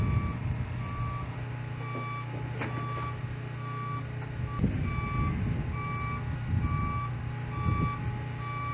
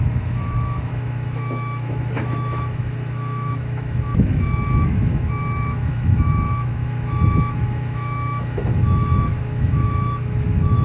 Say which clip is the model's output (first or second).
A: second